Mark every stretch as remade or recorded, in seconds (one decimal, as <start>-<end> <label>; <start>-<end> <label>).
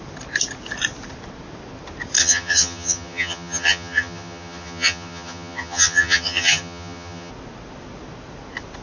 0.0-2.2 recorded; 2.2-7.3 remade; 7.3-8.8 recorded